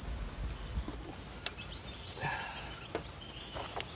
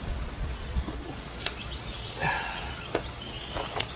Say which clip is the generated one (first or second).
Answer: second